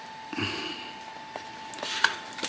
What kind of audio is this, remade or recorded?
recorded